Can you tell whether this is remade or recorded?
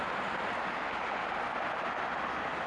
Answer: recorded